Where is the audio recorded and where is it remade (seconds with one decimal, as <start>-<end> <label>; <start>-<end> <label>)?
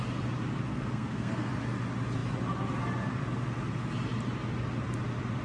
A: 0.0-0.7 recorded; 0.7-1.5 remade; 1.5-5.4 recorded